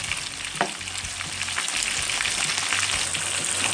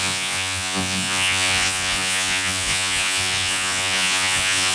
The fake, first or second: second